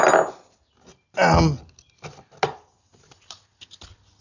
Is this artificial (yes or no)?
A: no